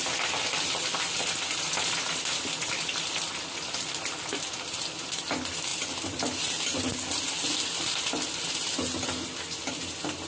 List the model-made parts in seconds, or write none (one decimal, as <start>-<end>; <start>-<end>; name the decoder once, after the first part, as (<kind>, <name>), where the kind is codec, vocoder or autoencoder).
none